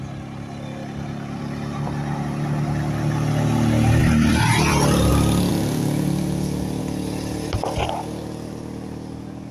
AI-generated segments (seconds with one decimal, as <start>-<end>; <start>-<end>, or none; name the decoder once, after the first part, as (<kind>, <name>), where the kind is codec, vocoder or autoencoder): 4.0-5.1 (vocoder, BigVGAN v2); 5.5-6.8